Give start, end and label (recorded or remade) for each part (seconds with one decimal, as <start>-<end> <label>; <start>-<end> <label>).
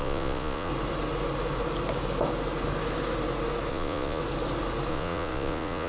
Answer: 0.0-0.7 remade; 0.7-3.7 recorded; 3.7-4.2 remade; 4.2-4.9 recorded; 4.9-5.9 remade